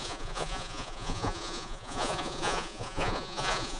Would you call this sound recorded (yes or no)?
no